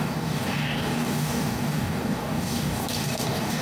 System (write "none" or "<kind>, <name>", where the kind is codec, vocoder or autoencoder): codec, DAC